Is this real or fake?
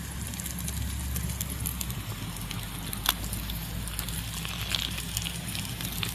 real